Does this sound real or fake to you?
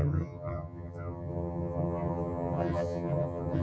fake